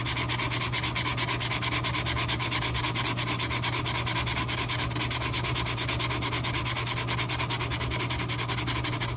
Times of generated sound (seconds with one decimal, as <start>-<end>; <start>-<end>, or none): none